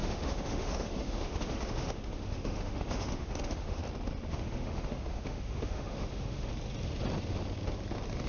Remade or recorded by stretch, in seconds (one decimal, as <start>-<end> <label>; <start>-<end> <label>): 0.0-3.8 remade; 3.8-4.3 recorded; 4.3-6.5 remade; 6.5-8.3 recorded